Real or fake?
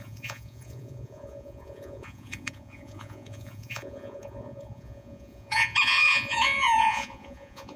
fake